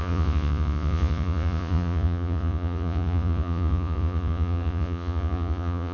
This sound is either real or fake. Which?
fake